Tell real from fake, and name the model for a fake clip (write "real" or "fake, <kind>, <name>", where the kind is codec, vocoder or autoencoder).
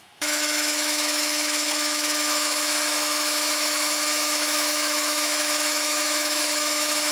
fake, autoencoder, DAC-VAE